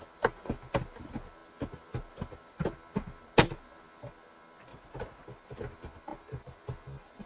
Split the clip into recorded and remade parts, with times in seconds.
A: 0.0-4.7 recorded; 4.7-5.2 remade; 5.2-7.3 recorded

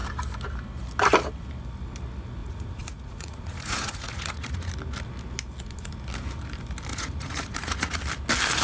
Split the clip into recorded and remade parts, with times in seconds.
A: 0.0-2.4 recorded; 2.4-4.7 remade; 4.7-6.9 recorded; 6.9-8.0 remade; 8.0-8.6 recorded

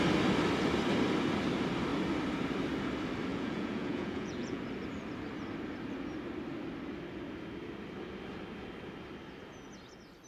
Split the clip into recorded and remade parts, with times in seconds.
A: 0.0-3.3 recorded; 3.3-4.6 remade; 4.6-10.3 recorded

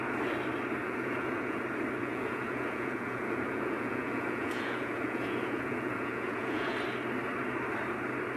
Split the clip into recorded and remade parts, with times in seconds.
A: 0.0-0.8 recorded; 0.8-1.6 remade; 1.6-2.0 recorded; 2.0-6.7 remade; 6.7-8.4 recorded

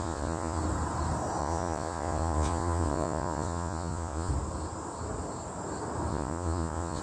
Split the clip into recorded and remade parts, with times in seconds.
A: 0.0-0.6 remade; 0.6-1.4 recorded; 1.4-4.3 remade; 4.3-6.1 recorded; 6.1-7.0 remade

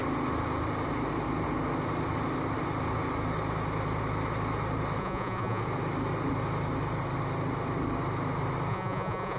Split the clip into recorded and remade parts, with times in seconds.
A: 0.0-5.0 recorded; 5.0-5.6 remade; 5.6-8.7 recorded; 8.7-9.4 remade

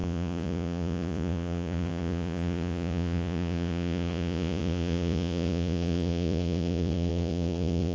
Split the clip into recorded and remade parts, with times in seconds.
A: 0.0-7.9 remade

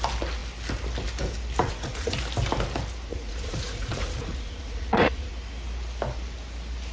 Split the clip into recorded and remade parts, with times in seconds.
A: 0.0-1.6 recorded; 1.6-2.2 remade; 2.2-3.1 recorded; 3.1-5.3 remade; 5.3-6.9 recorded